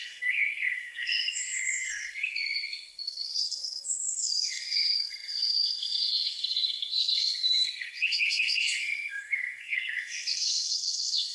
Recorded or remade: remade